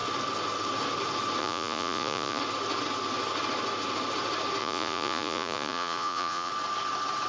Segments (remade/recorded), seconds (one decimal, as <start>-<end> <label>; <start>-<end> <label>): 0.0-1.4 recorded; 1.4-2.4 remade; 2.4-4.6 recorded; 4.6-6.5 remade; 6.5-7.3 recorded